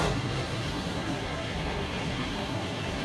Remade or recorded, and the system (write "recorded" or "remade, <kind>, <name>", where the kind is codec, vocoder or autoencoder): remade, codec, SNAC